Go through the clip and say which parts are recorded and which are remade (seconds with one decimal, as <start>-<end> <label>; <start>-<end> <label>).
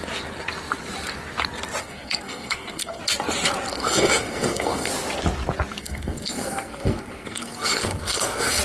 0.0-1.8 recorded; 1.8-3.0 remade; 3.0-3.7 recorded; 3.7-4.9 remade; 4.9-5.8 recorded; 5.8-8.6 remade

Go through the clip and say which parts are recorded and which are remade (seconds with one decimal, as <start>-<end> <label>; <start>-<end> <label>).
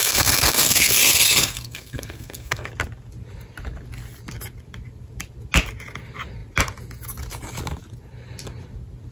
0.0-2.7 remade; 2.7-9.1 recorded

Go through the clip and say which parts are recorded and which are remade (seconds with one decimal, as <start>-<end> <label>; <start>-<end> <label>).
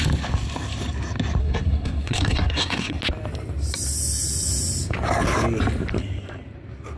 0.0-1.4 recorded; 1.4-3.0 remade; 3.0-7.0 recorded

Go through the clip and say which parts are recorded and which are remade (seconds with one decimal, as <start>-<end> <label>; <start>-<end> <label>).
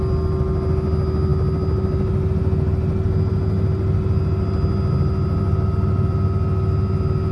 0.0-7.3 recorded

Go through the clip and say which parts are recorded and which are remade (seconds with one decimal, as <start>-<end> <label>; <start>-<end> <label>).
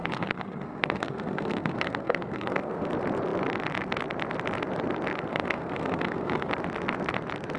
0.0-2.9 remade; 2.9-5.3 recorded; 5.3-6.5 remade; 6.5-7.6 recorded